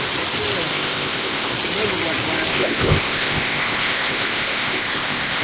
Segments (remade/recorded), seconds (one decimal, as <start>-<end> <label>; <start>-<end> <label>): 0.0-0.7 recorded; 0.7-1.5 remade; 1.5-2.5 recorded; 2.5-5.4 remade